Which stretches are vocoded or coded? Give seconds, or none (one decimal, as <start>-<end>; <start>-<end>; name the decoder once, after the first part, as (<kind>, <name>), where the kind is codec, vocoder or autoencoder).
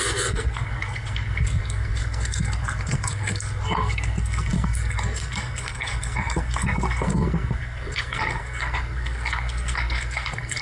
0.0-10.6 (codec, SNAC)